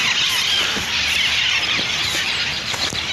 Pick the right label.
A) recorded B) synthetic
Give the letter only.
A